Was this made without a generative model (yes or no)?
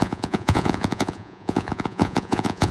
no